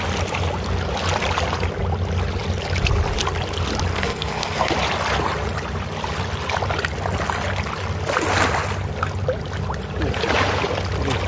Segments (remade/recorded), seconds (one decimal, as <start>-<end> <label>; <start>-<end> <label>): 0.0-3.9 recorded; 3.9-4.7 remade; 4.7-11.3 recorded